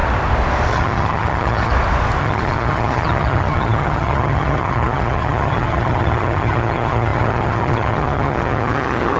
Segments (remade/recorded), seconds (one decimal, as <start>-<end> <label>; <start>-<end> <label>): 0.0-0.7 recorded; 0.7-1.7 remade; 1.7-2.2 recorded; 2.2-9.2 remade